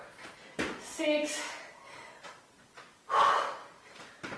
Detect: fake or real real